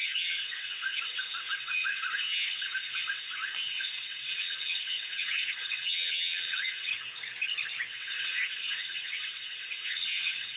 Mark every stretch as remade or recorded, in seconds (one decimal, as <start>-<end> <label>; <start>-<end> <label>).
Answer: 0.0-6.9 remade; 6.9-7.9 recorded; 7.9-10.6 remade